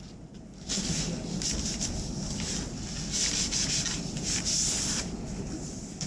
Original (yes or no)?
yes